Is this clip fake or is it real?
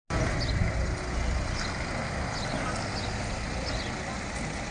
real